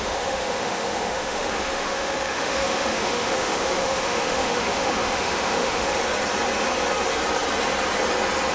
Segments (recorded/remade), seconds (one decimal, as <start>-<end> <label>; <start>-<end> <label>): 0.0-6.0 remade; 6.0-8.5 recorded